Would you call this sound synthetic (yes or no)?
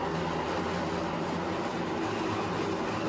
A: no